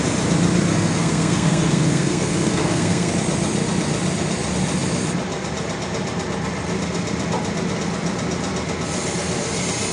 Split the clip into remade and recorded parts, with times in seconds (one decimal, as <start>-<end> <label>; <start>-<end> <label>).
0.0-0.7 recorded; 0.7-3.1 remade; 3.1-9.9 recorded